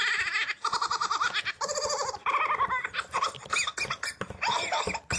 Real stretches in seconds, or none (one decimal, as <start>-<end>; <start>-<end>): 0.0-5.2

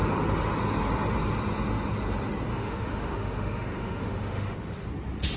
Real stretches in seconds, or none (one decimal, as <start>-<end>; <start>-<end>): 0.0-2.5; 4.9-5.4